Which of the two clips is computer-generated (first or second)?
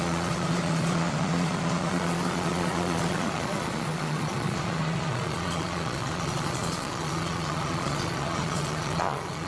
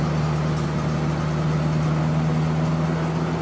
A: first